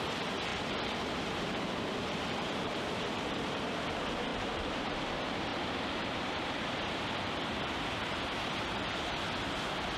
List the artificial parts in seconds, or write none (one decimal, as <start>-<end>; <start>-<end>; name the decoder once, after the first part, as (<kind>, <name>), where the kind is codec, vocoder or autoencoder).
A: 0.5-3.6 (vocoder, BigVGAN v2); 4.3-5.1; 5.5-7.0